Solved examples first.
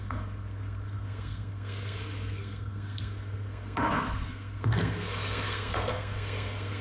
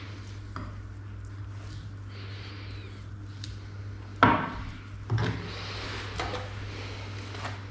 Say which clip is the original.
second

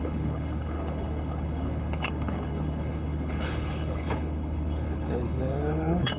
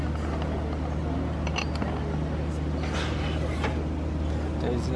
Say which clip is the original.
second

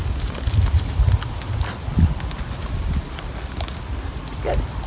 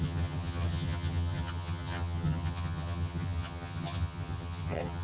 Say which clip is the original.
first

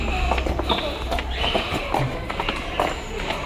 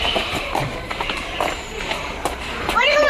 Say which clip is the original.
first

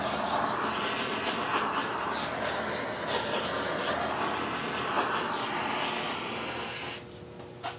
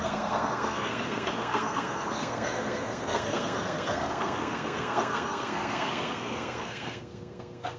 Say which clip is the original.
first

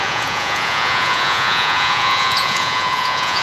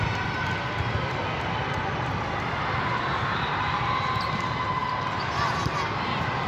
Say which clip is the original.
second